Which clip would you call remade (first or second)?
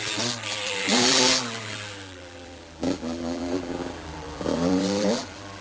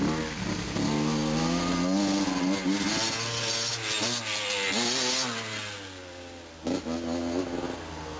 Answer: first